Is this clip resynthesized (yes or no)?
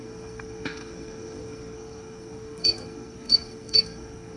yes